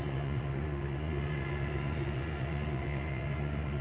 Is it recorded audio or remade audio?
remade